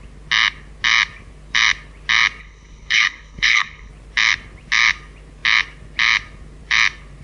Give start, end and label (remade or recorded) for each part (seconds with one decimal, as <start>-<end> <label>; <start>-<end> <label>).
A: 0.0-2.4 recorded; 2.4-3.9 remade; 3.9-7.2 recorded